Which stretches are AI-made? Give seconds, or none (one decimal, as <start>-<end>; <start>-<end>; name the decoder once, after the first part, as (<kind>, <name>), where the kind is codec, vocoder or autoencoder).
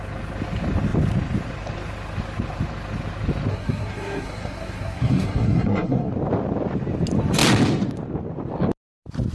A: 3.5-6.1 (codec, SNAC)